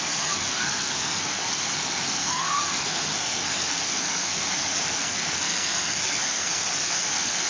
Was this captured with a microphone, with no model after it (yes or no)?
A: no